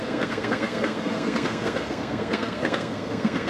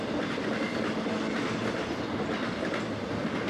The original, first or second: second